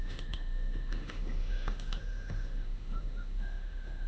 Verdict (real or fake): fake